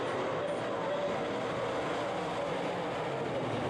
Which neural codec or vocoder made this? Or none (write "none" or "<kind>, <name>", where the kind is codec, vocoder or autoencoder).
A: none